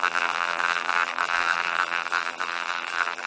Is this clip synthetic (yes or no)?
yes